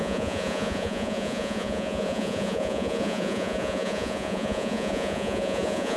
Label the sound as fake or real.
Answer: fake